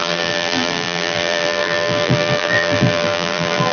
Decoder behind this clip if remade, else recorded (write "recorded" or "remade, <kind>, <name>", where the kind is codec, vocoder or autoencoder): remade, vocoder, BigVGAN v2